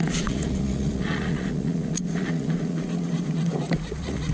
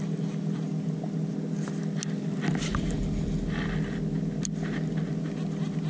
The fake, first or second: first